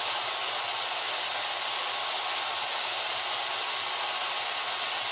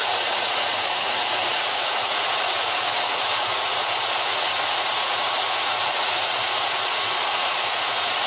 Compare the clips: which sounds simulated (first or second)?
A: second